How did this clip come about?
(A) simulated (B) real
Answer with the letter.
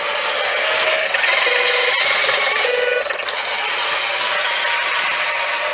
B